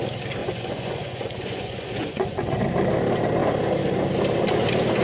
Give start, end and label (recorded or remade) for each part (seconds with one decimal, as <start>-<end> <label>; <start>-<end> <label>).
0.0-0.4 recorded; 0.4-2.6 remade; 2.6-5.0 recorded